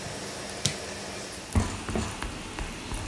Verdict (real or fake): real